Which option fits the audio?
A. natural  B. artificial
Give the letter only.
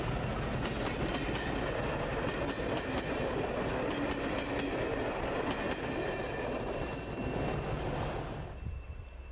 A